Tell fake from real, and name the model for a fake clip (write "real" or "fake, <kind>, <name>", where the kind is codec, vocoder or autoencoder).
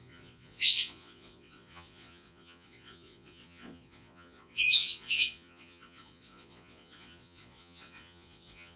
fake, vocoder, Vocos